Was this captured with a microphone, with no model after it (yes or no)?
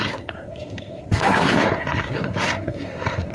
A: no